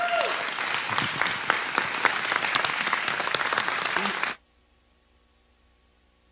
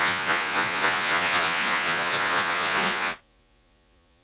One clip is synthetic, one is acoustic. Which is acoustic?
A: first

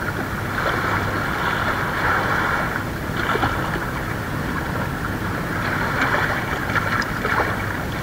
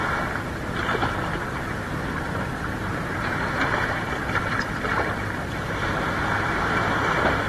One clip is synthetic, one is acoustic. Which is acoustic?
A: first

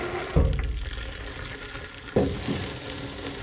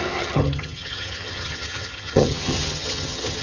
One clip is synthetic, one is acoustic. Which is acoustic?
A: first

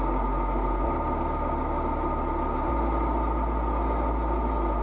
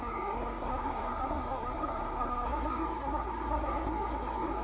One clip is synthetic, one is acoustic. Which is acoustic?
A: first